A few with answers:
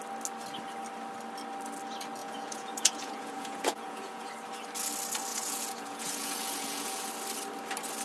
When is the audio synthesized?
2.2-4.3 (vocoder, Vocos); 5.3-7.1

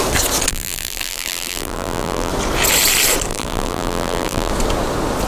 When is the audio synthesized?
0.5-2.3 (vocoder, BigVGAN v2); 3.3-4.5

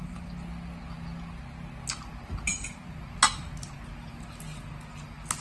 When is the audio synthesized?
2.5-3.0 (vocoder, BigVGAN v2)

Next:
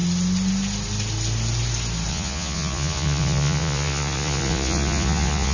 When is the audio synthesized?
2.1-5.5 (vocoder, Vocos)

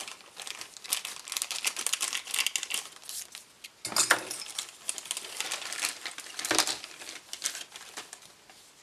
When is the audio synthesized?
none